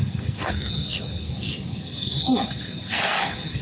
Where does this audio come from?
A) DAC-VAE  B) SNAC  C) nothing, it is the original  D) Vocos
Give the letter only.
B